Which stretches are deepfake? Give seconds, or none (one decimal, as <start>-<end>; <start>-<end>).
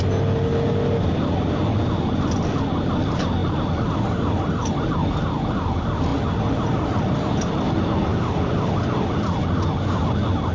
8.1-8.7